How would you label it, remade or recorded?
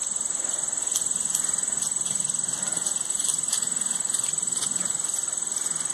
recorded